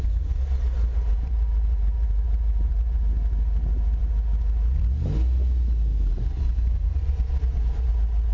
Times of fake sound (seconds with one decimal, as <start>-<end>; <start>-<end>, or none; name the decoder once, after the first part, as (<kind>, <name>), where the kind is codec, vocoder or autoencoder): 1.1-3.0 (vocoder, BigVGAN v2); 5.9-7.9